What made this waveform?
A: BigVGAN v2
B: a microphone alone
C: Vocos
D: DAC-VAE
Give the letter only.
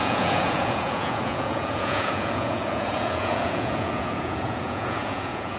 C